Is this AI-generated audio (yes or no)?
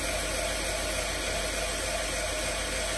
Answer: no